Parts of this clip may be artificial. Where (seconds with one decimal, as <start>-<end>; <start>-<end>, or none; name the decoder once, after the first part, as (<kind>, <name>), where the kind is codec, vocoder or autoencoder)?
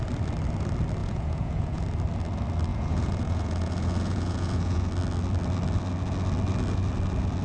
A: 1.0-1.8 (vocoder, Vocos); 2.7-4.9